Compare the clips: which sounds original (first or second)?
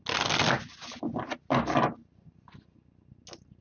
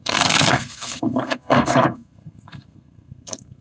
first